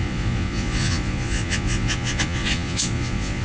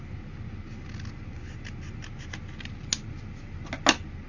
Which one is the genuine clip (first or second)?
second